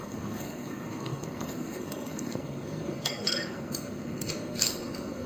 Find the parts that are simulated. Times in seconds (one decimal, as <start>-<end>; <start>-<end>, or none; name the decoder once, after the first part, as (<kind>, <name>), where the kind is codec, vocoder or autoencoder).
0.0-5.3 (codec, SNAC)